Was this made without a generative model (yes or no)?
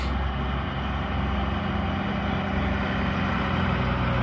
yes